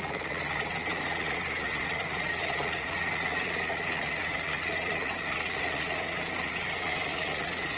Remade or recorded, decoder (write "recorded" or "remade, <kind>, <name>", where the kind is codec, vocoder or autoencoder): remade, vocoder, Vocos